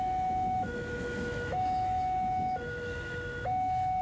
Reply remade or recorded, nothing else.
remade